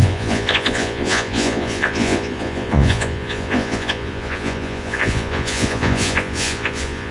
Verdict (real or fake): fake